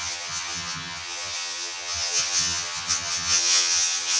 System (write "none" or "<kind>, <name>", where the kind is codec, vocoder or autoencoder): vocoder, HiFi-GAN